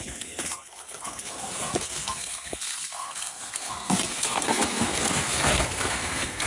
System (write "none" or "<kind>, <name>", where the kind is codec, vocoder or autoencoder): codec, SNAC